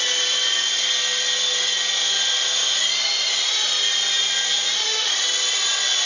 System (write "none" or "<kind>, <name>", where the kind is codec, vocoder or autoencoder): none